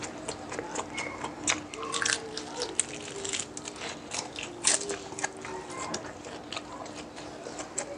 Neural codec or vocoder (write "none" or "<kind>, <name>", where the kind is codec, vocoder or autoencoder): none